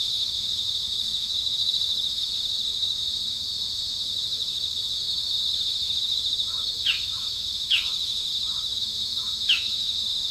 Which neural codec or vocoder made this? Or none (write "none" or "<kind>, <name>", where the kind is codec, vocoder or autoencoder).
autoencoder, DAC-VAE